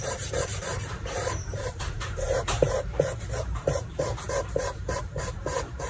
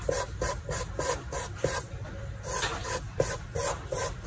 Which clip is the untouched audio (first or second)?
second